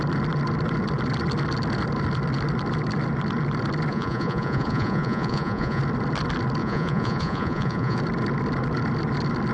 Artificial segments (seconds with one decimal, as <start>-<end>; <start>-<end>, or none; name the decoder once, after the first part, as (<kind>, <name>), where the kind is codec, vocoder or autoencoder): 3.9-5.8 (vocoder, Vocos); 6.6-8.0